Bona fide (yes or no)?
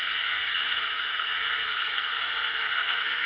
no